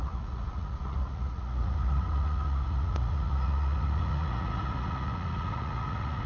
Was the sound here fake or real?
fake